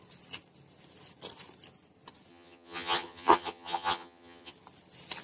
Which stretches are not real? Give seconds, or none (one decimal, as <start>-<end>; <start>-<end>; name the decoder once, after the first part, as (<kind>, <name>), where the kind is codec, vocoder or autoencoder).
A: 2.3-4.5 (vocoder, HiFi-GAN)